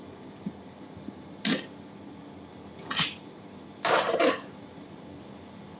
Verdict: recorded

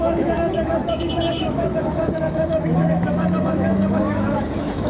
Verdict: remade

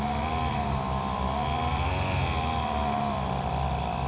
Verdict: recorded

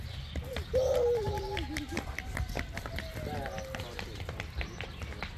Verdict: recorded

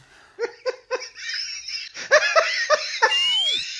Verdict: recorded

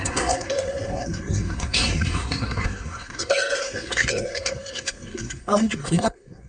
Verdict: remade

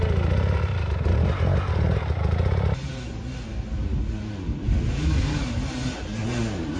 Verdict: recorded